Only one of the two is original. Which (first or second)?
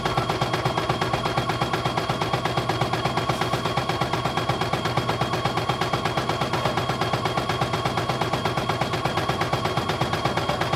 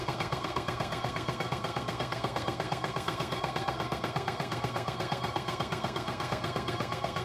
first